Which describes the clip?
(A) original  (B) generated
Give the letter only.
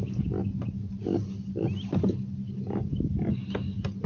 A